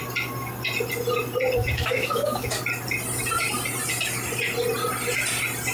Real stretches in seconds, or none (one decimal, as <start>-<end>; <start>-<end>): 0.0-1.6; 2.6-5.7